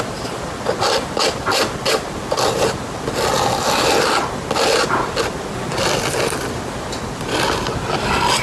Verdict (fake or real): real